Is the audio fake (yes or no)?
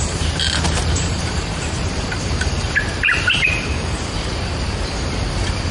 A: yes